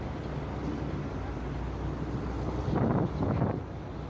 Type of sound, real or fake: real